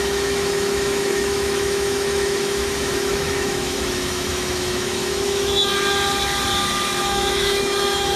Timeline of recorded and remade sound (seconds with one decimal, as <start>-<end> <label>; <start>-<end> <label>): 0.0-5.7 remade; 5.7-7.0 recorded; 7.0-8.2 remade